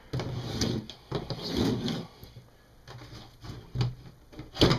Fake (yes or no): no